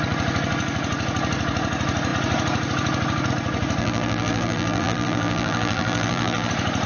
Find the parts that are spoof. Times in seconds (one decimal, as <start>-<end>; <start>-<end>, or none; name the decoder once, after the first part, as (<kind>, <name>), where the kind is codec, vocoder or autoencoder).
3.8-6.5 (vocoder, BigVGAN v2)